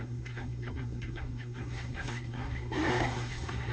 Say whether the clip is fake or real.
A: fake